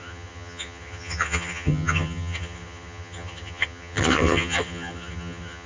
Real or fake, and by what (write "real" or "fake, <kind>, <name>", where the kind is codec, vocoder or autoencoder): fake, vocoder, HiFi-GAN